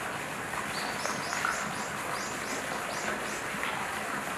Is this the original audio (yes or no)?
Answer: yes